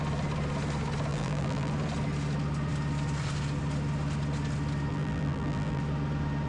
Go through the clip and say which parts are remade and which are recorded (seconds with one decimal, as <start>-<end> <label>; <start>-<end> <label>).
0.0-1.1 recorded; 1.1-1.7 remade; 1.7-4.9 recorded; 4.9-5.8 remade; 5.8-6.5 recorded